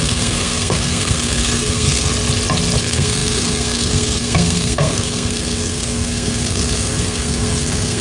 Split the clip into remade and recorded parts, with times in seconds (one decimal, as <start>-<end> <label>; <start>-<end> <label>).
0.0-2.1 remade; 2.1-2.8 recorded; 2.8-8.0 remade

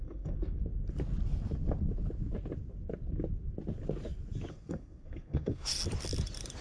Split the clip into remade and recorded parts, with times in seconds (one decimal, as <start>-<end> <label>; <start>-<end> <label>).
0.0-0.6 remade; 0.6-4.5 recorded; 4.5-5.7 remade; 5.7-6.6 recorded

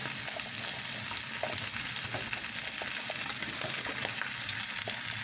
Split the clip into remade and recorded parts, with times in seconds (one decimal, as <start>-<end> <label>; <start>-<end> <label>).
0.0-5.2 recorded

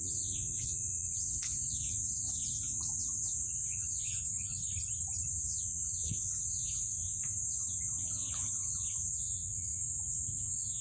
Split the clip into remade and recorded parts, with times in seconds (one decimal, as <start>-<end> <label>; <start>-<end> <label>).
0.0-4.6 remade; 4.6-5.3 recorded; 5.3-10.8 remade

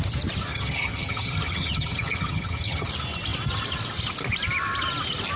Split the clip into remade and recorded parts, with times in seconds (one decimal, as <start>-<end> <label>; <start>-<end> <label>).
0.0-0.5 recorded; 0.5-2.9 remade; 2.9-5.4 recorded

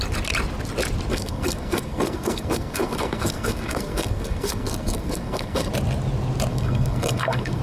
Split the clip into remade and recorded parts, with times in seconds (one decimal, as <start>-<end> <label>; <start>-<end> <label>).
0.0-1.1 recorded; 1.1-5.7 remade; 5.7-6.5 recorded; 6.5-7.6 remade